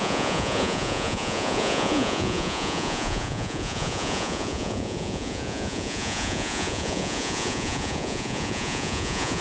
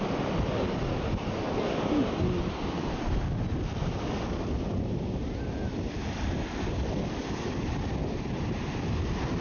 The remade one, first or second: first